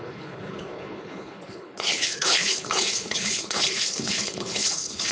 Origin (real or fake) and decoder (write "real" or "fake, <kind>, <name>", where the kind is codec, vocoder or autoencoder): fake, codec, HILCodec